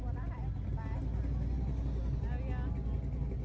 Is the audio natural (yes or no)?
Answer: yes